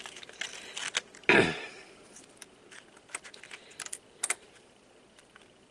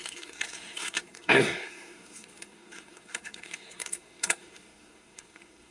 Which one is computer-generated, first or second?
second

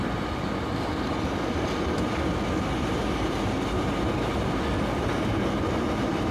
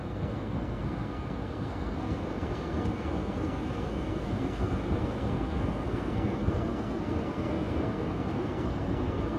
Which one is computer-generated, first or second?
second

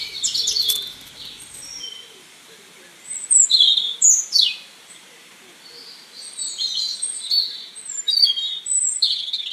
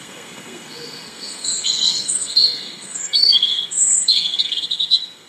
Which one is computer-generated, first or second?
second